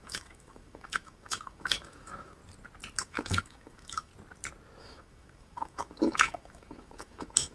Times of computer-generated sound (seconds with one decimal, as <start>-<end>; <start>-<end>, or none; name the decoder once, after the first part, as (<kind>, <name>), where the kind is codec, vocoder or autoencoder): 0.0-2.4 (autoencoder, DAC-VAE); 3.0-4.1; 4.8-7.5